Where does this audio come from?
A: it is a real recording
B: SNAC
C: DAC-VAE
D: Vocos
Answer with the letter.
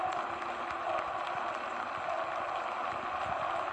A